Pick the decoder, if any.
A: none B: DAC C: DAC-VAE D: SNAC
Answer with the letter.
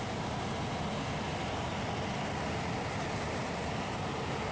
A